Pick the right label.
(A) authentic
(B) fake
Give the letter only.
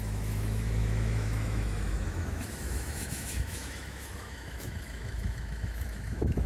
B